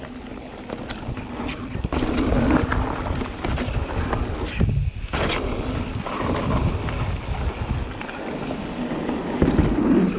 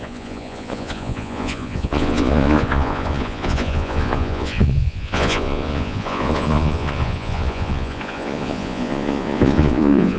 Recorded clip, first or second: first